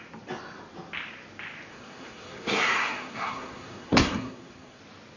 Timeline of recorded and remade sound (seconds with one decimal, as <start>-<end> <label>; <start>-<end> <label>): 0.0-1.7 recorded; 1.7-4.8 remade; 4.8-5.2 recorded